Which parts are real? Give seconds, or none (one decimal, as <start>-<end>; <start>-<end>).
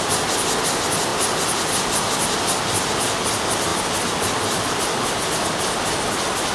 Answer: 0.0-6.5